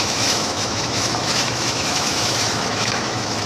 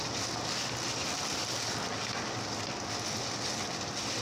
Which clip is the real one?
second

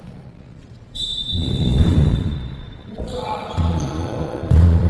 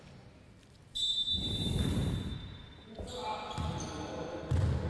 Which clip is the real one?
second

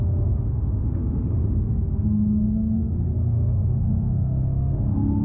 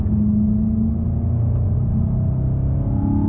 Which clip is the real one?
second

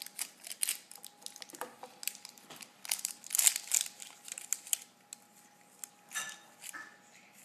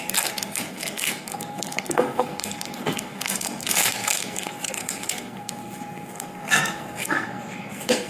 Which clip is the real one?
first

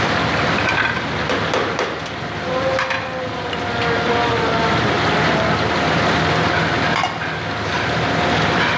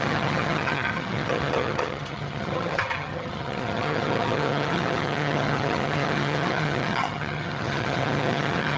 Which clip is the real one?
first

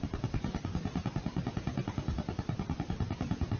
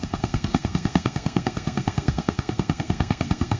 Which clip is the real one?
first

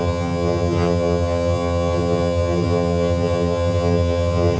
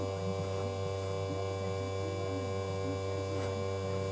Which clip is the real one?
second